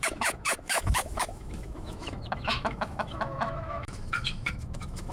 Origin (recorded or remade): remade